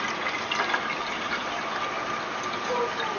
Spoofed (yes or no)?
no